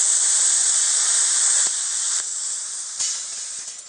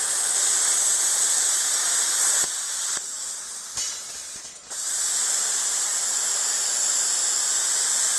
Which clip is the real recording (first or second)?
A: second